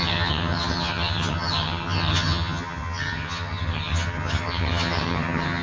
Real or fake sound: fake